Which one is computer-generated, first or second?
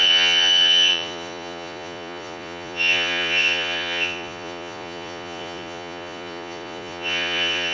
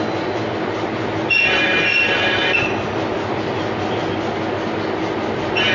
first